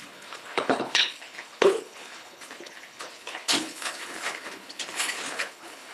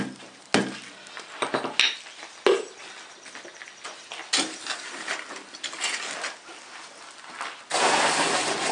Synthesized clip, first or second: first